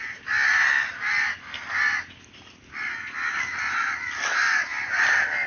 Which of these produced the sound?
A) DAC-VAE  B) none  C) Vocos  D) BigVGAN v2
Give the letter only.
B